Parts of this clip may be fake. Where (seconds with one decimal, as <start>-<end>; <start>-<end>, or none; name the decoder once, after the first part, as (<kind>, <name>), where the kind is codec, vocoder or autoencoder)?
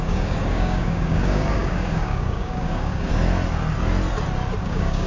0.0-3.1 (codec, DAC); 4.6-5.1